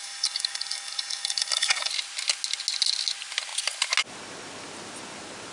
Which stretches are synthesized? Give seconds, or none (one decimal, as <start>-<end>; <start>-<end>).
0.0-1.9